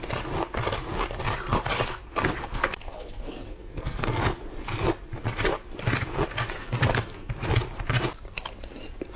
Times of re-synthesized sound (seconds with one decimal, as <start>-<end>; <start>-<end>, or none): 2.4-4.2; 6.6-7.3